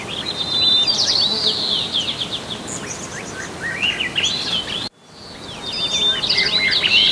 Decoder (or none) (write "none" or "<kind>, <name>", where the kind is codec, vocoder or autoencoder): none